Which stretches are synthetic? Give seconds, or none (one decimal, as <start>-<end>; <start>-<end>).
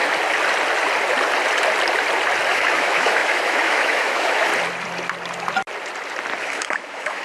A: 2.5-4.5; 6.4-7.2